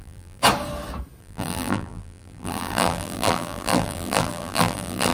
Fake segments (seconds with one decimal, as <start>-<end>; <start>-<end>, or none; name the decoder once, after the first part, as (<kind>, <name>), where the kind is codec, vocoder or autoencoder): 0.0-0.4 (vocoder, BigVGAN v2); 1.2-5.1